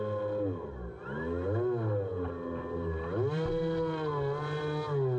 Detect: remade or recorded recorded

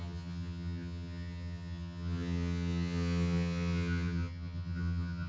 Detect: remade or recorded remade